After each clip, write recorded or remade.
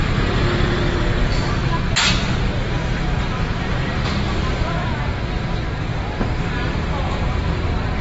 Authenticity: recorded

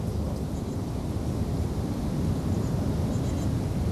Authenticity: recorded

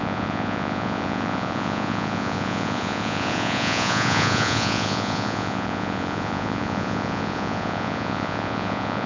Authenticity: remade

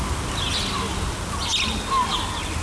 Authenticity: recorded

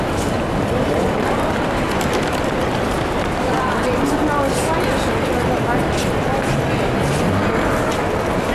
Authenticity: recorded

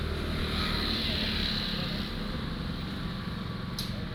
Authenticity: recorded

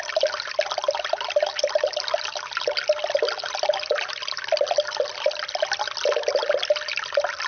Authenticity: recorded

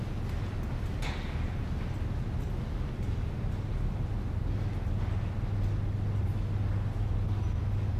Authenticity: recorded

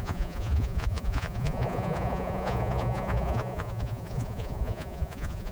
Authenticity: remade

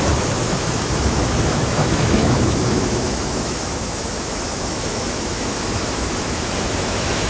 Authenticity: remade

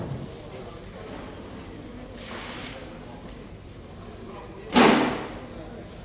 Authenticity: recorded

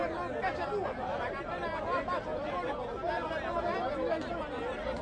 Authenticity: recorded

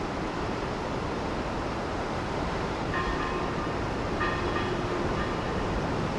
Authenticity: remade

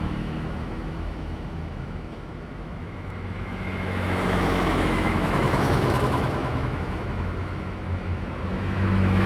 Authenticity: remade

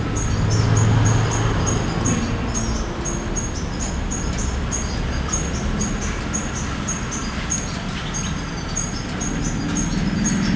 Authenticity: recorded